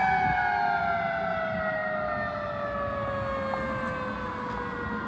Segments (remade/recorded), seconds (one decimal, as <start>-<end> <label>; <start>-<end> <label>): 0.0-5.1 recorded